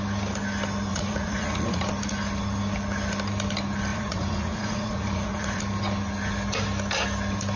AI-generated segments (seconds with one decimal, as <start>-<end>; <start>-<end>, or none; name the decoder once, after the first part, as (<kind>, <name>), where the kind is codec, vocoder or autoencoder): 0.9-1.9 (vocoder, Vocos); 3.9-5.6